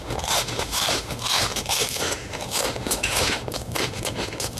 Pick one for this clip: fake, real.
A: fake